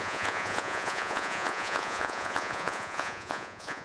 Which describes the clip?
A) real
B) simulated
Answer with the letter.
B